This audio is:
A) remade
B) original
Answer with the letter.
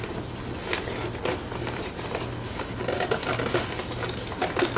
B